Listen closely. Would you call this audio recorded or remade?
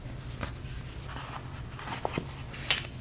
recorded